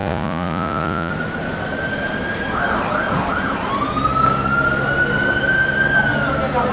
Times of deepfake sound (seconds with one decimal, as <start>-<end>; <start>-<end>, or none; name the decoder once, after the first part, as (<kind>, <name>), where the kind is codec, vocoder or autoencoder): 0.0-1.1 (vocoder, Vocos)